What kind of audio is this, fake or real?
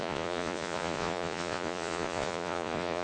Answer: fake